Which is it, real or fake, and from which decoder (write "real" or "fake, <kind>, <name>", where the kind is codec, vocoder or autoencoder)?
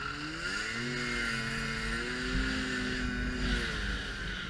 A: real